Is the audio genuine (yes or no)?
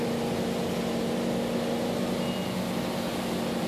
yes